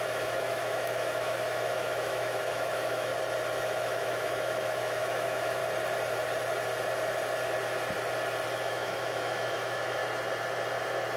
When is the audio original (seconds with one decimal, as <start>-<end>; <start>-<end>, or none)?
3.1-3.6; 5.6-8.7; 10.0-11.2

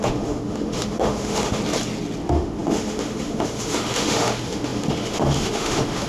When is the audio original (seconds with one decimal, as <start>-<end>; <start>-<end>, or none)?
1.6-2.2